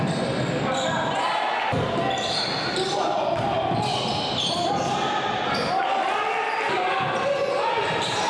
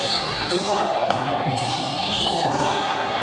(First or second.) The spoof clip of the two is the second